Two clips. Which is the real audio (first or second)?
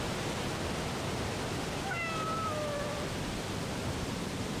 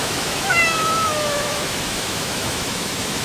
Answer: first